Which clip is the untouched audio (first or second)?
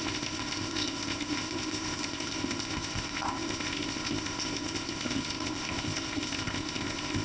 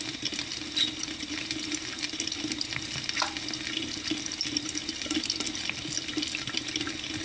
second